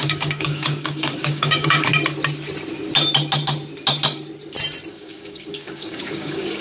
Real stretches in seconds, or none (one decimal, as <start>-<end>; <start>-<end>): 1.9-4.9